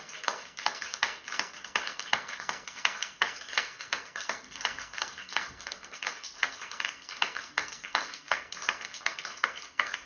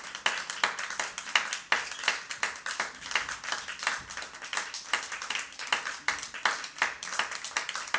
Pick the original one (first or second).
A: second